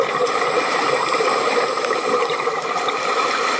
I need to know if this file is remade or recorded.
remade